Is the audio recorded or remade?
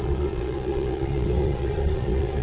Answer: remade